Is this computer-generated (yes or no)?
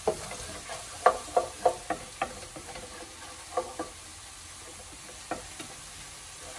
no